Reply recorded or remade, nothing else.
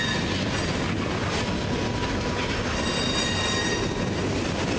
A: recorded